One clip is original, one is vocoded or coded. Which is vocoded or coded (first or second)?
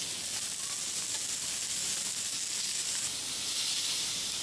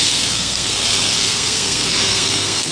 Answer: second